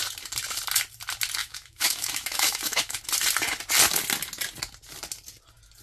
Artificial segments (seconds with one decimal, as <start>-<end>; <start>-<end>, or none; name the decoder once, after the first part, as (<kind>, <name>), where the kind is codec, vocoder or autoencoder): 1.4-3.0 (autoencoder, DAC-VAE)